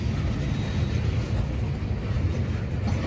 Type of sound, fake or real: real